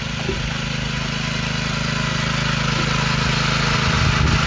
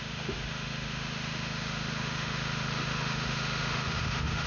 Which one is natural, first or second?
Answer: first